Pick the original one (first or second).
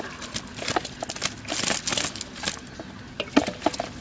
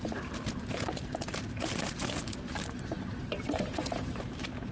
first